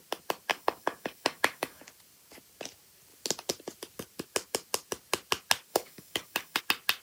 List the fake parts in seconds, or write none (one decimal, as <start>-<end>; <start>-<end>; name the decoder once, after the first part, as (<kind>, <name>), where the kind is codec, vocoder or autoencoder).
0.5-1.8 (codec, DAC); 5.7-6.6